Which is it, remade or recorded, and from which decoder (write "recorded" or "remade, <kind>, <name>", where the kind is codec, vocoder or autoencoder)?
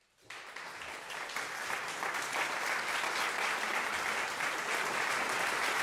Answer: recorded